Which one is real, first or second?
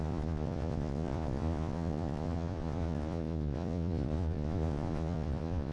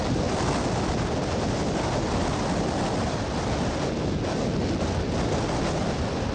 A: second